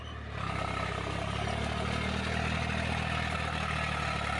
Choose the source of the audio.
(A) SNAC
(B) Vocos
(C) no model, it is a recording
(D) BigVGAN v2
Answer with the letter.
C